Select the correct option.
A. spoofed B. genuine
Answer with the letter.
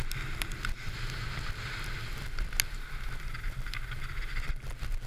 B